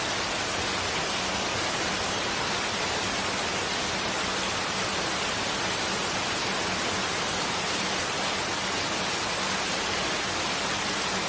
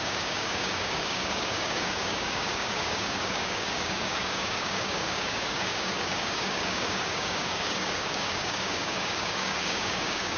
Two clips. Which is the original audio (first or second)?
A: first